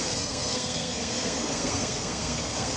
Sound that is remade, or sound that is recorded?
remade